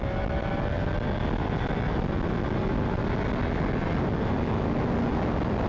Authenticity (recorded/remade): recorded